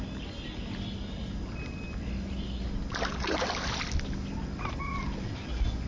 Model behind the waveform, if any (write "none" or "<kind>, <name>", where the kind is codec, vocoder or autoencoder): none